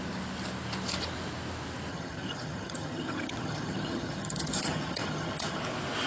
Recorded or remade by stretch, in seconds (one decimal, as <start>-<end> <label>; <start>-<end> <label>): 0.0-1.9 recorded; 1.9-5.6 remade; 5.6-6.1 recorded